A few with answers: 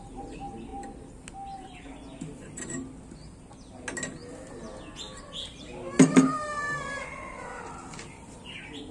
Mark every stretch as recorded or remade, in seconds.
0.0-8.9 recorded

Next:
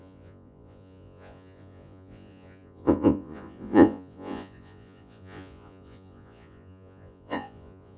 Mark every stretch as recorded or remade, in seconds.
0.0-8.0 remade